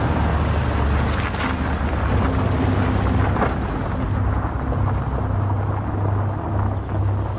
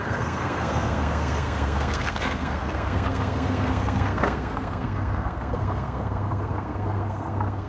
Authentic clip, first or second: first